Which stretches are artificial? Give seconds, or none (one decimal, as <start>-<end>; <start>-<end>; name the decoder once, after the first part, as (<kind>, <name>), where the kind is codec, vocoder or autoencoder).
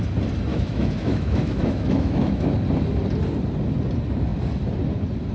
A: 0.5-2.5 (autoencoder, DAC-VAE)